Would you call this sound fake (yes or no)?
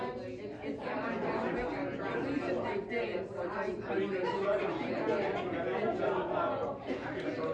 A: no